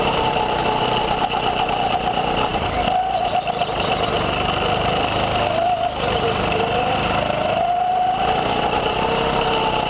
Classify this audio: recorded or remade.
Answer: recorded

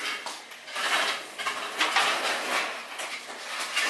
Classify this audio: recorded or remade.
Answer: recorded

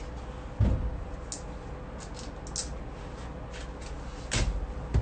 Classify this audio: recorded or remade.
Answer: recorded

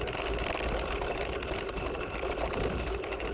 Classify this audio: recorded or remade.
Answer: recorded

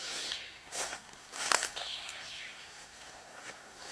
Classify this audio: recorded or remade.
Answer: remade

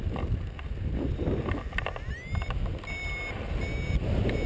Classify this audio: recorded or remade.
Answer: recorded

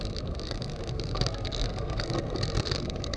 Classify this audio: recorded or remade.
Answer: remade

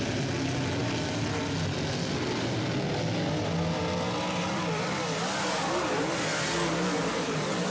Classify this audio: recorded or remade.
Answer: recorded